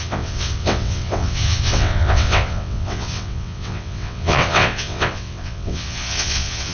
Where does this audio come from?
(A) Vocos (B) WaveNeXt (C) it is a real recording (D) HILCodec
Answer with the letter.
B